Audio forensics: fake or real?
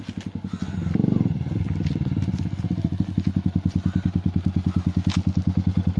real